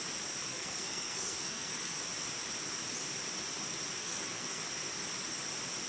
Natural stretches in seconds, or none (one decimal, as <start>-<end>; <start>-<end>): 0.0-0.5; 2.0-4.0; 4.6-5.9